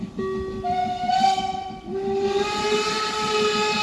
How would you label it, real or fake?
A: real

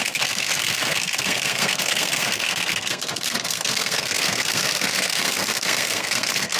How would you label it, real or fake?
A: fake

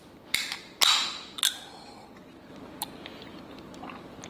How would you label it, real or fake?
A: real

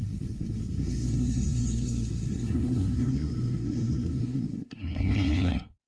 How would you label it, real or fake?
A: fake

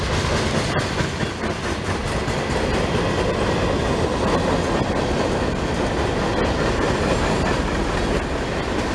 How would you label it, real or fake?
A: real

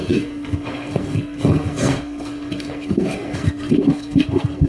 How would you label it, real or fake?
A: fake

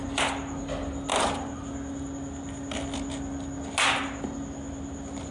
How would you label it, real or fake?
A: real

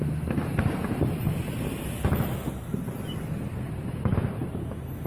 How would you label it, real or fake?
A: real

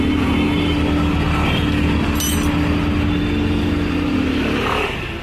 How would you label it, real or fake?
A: real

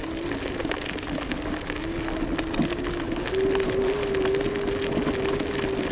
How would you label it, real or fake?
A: real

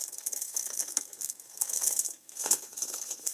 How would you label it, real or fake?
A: fake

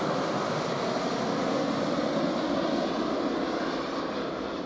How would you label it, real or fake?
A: real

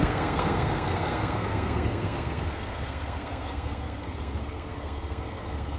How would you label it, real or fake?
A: fake